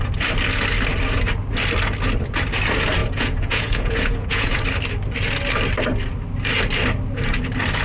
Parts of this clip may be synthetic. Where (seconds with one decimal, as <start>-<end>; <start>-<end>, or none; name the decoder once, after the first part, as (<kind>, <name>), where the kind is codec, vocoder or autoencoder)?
3.0-4.6 (vocoder, Vocos)